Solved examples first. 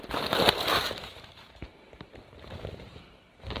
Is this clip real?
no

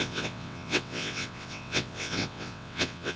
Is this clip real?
no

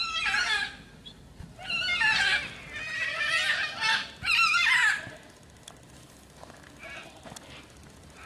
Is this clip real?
yes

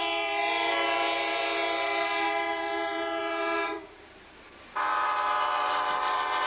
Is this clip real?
no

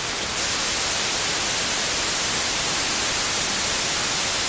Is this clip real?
yes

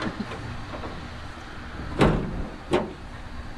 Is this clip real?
yes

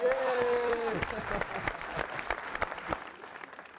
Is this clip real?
no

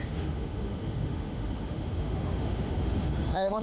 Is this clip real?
no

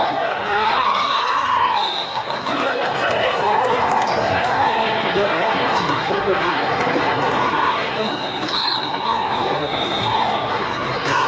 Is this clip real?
no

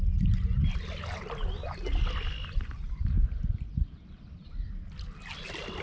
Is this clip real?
yes